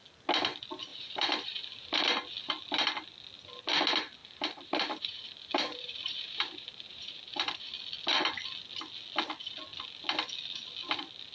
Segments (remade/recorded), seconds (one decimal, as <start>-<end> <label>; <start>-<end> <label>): 0.0-0.9 recorded; 0.9-2.0 remade; 2.0-4.2 recorded; 4.2-7.7 remade; 7.7-11.3 recorded